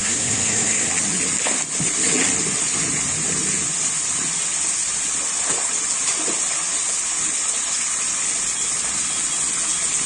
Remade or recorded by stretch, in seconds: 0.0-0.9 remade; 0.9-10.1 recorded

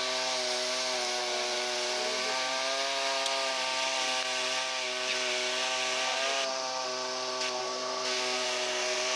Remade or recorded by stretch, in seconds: 0.0-7.6 recorded; 7.6-9.2 remade